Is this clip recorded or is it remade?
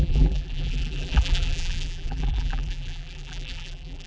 remade